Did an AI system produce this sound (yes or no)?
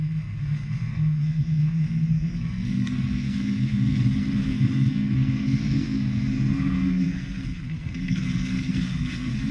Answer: yes